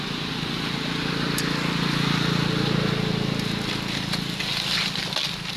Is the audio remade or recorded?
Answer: recorded